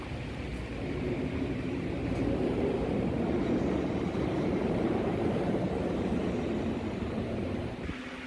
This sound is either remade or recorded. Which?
remade